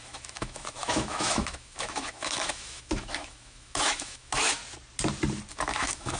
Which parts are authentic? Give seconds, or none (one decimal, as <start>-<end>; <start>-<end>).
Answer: 4.6-5.5